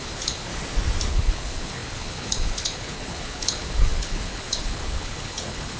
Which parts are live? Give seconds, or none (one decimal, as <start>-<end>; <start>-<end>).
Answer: 0.5-1.1